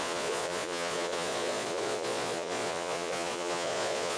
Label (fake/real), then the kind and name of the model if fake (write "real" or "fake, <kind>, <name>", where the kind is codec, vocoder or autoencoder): fake, vocoder, Vocos